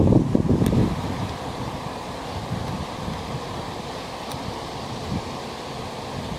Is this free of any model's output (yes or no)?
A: yes